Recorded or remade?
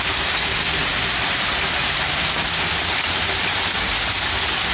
recorded